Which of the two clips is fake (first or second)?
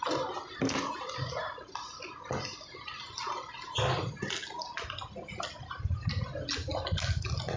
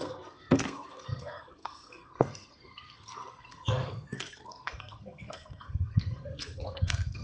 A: second